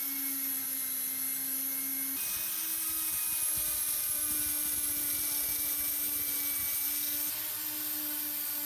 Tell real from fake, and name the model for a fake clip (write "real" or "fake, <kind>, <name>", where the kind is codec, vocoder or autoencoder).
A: real